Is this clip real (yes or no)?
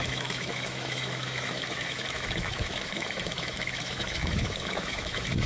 no